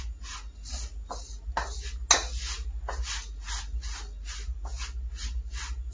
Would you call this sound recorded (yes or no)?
yes